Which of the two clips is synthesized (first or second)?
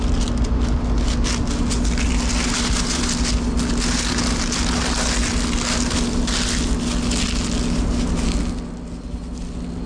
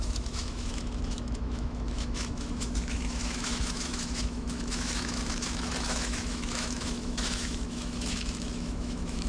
second